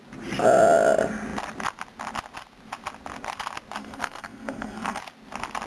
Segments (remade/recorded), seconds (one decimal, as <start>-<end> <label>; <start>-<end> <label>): 0.0-3.8 recorded; 3.8-5.0 remade; 5.0-5.7 recorded